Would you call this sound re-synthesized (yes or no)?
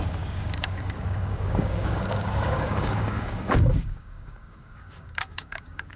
yes